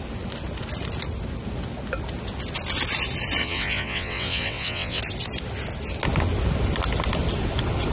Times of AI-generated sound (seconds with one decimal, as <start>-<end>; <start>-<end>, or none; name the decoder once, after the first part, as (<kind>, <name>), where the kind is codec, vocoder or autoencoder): 3.4-5.0 (vocoder, WaveNeXt)

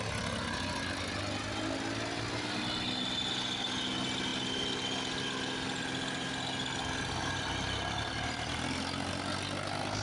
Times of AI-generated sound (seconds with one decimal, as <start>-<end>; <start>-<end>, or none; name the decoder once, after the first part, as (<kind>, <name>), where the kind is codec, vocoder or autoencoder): none

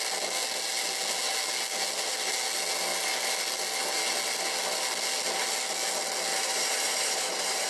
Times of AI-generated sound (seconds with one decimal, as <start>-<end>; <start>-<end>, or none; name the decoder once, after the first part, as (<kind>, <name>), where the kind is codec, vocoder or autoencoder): 6.3-7.7 (vocoder, BigVGAN v2)

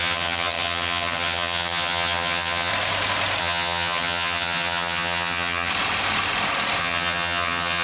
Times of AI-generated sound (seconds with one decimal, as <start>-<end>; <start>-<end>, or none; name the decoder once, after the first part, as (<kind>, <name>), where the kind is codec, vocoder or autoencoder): 0.0-2.7 (vocoder, HiFi-GAN); 3.4-5.7; 6.8-7.8

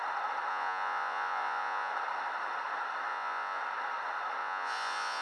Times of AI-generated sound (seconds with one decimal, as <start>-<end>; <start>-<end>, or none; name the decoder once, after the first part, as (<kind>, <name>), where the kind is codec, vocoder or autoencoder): 0.5-1.9 (vocoder, Vocos); 3.1-3.6; 4.4-5.2